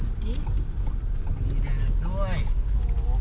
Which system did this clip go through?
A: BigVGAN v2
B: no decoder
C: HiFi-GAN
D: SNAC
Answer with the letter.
B